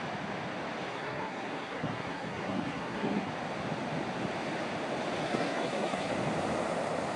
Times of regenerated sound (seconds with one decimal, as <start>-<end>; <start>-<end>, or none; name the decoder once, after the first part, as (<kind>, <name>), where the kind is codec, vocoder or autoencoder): 0.9-3.3 (codec, SNAC); 5.2-6.1